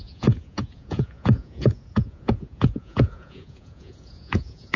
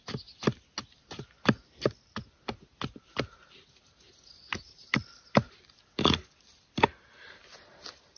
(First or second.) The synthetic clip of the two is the first